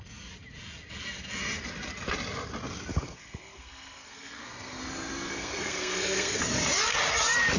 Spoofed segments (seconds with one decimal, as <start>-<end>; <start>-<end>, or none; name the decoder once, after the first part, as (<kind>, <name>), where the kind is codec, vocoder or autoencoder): 2.9-4.8 (codec, SNAC); 5.3-6.4